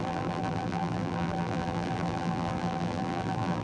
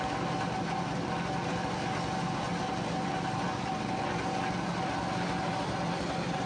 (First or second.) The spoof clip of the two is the first